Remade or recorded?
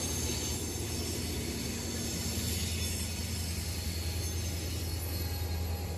recorded